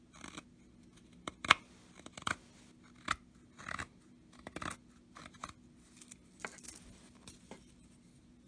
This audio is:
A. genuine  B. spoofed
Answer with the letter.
A